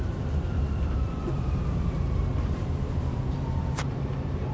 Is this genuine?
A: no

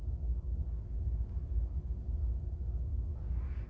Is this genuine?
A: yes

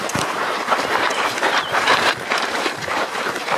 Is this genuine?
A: no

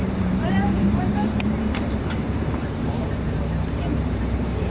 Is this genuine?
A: no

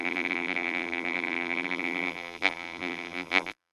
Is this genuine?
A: no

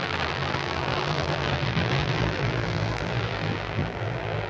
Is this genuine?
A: no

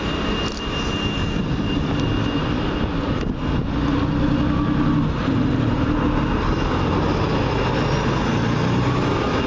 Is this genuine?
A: yes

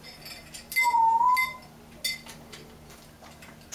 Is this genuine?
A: yes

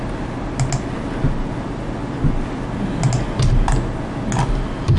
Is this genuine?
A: yes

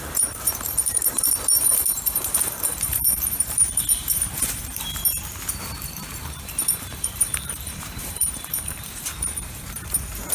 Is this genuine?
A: no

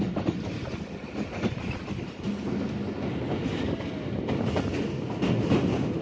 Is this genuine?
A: yes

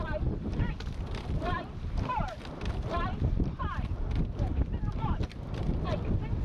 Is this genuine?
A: yes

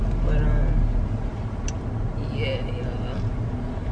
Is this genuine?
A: yes